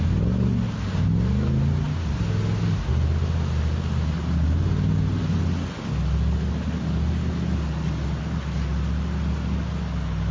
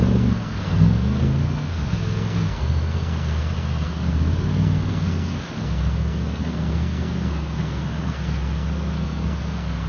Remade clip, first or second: second